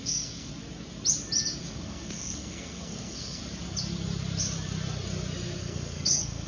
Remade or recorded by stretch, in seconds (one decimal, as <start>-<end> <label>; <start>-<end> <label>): 0.0-0.5 remade; 0.5-1.6 recorded; 1.6-3.4 remade; 3.4-5.6 recorded; 5.6-6.5 remade